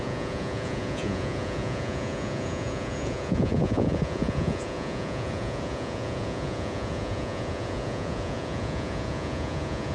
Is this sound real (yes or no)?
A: no